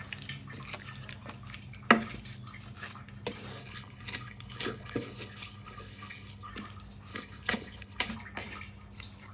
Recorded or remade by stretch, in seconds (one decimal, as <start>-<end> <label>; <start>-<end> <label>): 0.0-3.5 recorded; 3.5-6.5 remade; 6.5-7.1 recorded; 7.1-8.1 remade; 8.1-9.3 recorded